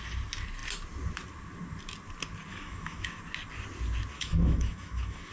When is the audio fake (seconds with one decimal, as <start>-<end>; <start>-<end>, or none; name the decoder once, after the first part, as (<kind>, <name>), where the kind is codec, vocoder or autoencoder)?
2.5-3.2 (autoencoder, DAC-VAE); 4.1-5.3